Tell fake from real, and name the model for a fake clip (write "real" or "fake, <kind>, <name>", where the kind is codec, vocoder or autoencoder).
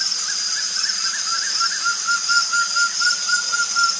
real